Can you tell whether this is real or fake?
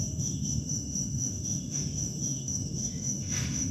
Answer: fake